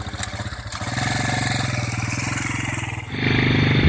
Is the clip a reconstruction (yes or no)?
no